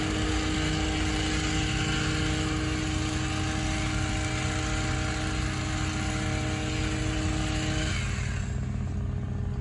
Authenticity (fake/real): real